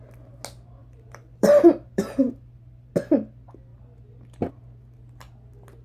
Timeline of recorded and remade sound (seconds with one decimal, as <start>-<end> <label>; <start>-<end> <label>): 0.0-0.8 recorded; 0.8-2.9 remade; 2.9-5.8 recorded